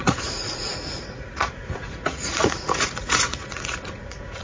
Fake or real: fake